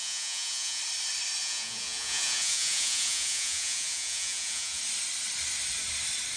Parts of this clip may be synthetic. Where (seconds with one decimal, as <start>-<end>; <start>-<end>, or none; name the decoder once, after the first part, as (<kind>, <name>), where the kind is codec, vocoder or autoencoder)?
0.0-0.8 (vocoder, Vocos); 1.4-4.8